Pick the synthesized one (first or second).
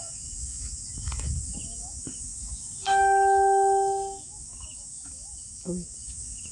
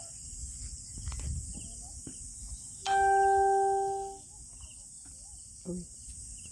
first